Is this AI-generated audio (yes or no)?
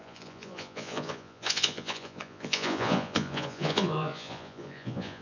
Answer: yes